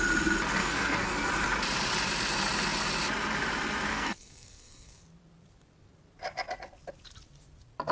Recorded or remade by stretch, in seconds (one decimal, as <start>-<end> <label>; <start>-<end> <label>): 0.0-0.6 recorded; 0.6-1.3 remade; 1.3-3.9 recorded; 3.9-5.0 remade; 5.0-7.9 recorded